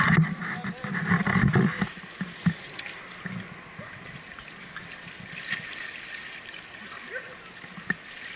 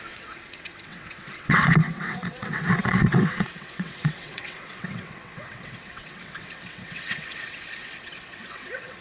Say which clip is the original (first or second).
first